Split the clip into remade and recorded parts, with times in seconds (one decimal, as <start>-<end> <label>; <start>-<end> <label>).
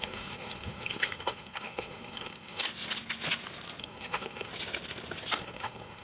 0.0-2.6 remade; 2.6-3.8 recorded; 3.8-4.5 remade; 4.5-5.4 recorded; 5.4-6.0 remade